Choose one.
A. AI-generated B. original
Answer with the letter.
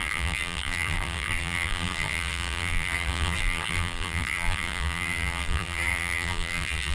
A